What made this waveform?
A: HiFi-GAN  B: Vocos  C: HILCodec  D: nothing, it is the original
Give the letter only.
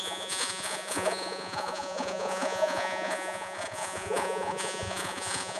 B